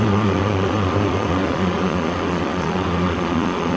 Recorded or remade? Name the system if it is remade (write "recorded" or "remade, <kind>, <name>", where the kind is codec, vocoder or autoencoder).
remade, vocoder, Vocos